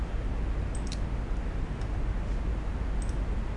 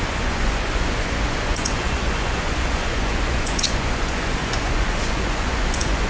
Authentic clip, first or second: first